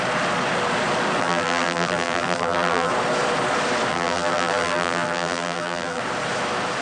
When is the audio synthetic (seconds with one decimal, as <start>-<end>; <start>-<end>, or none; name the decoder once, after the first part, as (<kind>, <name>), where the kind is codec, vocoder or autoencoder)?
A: 1.2-2.9 (vocoder, BigVGAN v2); 3.9-6.0